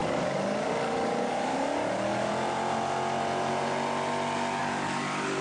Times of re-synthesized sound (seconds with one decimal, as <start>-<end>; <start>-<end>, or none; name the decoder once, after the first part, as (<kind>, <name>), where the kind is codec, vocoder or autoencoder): 0.0-2.3 (codec, DAC); 4.6-5.4